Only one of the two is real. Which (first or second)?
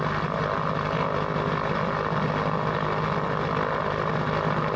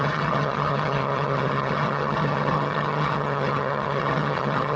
first